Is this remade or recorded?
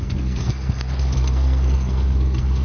remade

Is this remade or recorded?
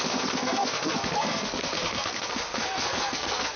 remade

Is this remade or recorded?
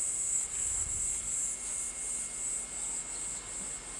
recorded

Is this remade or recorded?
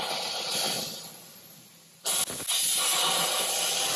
recorded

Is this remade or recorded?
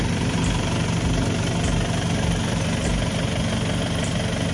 recorded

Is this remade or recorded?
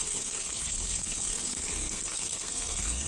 remade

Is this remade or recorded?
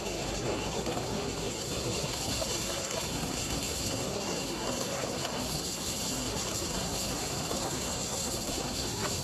remade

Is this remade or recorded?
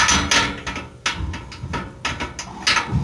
recorded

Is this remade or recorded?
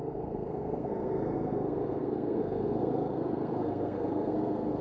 remade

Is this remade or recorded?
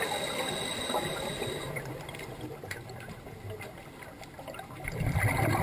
recorded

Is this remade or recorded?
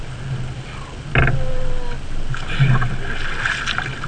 recorded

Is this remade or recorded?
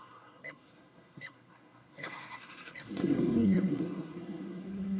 remade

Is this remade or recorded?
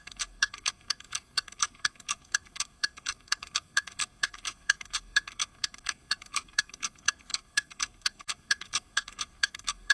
remade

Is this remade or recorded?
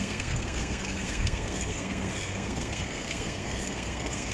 remade